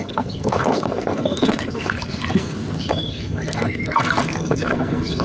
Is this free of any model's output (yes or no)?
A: no